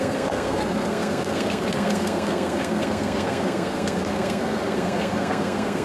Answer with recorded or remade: remade